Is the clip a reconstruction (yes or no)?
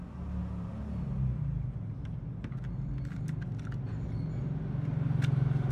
no